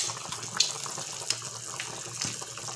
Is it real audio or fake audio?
real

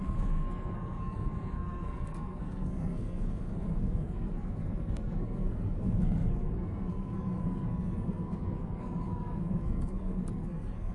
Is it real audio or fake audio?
fake